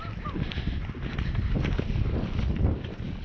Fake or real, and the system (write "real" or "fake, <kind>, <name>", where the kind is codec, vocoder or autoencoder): real